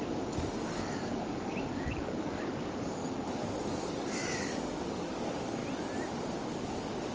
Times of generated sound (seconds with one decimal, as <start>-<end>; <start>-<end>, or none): 0.0-3.0; 3.6-5.6; 6.5-7.1

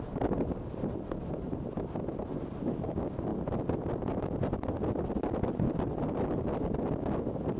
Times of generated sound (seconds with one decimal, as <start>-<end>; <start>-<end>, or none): none